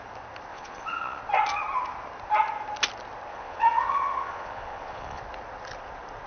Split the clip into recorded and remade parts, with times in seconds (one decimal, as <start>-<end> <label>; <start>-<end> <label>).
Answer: 0.0-0.5 recorded; 0.5-1.2 remade; 1.2-3.3 recorded; 3.3-5.2 remade; 5.2-6.3 recorded